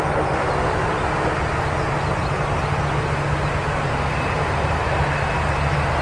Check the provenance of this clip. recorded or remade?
recorded